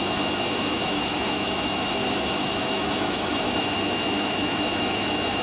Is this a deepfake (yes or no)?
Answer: yes